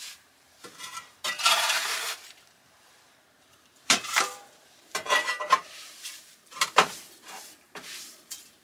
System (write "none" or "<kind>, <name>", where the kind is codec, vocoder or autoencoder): vocoder, BigVGAN v2